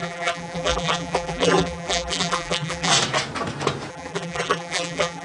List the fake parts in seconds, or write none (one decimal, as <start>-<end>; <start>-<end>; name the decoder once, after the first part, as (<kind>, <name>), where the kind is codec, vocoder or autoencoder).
0.0-2.9 (vocoder, BigVGAN v2); 3.9-5.2